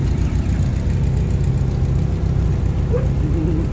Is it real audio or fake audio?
real